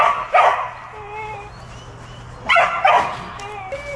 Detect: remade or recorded recorded